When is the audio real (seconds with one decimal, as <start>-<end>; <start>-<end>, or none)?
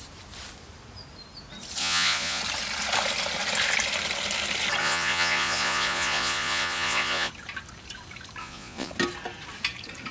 0.0-1.8; 2.4-4.8; 7.3-8.4; 8.9-10.1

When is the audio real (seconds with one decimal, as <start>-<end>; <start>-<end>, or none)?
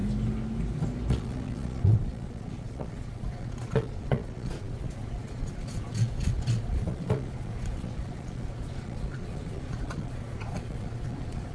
0.0-1.1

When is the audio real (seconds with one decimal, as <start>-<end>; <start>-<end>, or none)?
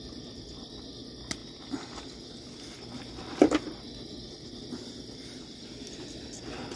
0.0-6.8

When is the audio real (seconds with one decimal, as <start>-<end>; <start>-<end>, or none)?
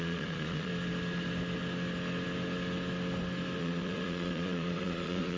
0.7-3.6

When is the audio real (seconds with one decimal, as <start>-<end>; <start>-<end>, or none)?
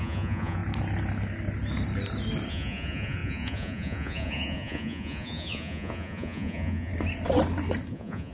0.6-2.5; 6.9-7.9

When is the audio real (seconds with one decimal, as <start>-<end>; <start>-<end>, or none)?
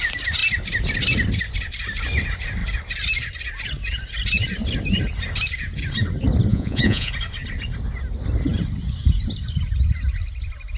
0.0-6.5; 7.1-10.8